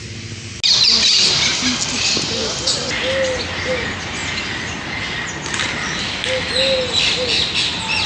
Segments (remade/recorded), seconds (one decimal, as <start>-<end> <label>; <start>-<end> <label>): 0.0-8.1 recorded